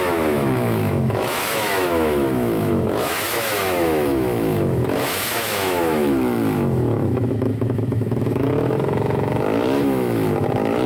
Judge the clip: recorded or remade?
remade